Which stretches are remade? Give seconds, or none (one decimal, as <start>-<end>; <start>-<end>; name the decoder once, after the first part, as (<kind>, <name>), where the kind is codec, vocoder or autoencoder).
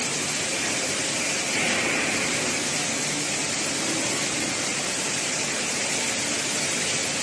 none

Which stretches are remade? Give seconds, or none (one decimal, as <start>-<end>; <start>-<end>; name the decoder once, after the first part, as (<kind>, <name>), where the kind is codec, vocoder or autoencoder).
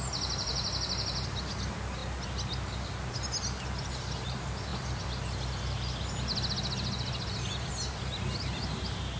none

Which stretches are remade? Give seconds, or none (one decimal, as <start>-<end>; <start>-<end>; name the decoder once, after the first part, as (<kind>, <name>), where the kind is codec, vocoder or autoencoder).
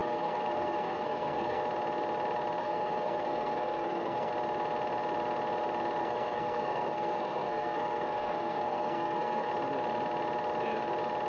0.0-1.6 (codec, SNAC); 2.6-4.3; 6.0-9.5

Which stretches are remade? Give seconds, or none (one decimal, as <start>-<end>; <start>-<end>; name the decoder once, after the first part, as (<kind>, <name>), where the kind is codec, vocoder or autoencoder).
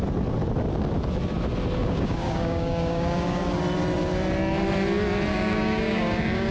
1.8-3.4 (codec, DAC); 5.3-6.5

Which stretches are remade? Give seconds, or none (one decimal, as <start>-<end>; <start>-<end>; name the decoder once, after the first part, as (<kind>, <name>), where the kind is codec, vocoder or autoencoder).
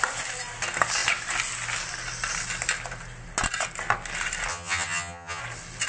4.5-5.4 (vocoder, HiFi-GAN)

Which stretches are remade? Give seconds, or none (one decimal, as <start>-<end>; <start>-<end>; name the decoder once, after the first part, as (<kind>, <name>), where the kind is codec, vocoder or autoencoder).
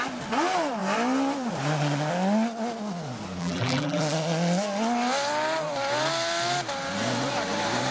3.4-4.0 (vocoder, BigVGAN v2)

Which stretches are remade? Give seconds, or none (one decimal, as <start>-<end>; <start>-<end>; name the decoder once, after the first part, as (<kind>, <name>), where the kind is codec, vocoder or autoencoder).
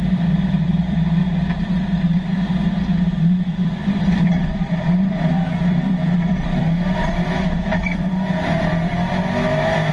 0.0-1.2 (vocoder, BigVGAN v2); 3.4-8.9